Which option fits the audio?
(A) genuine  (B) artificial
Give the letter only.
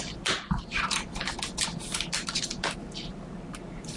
B